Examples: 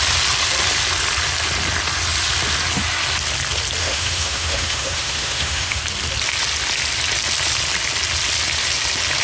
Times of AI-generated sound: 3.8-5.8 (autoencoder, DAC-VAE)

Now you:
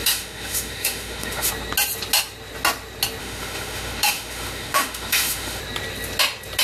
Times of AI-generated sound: 0.0-1.5 (autoencoder, DAC-VAE); 3.2-5.6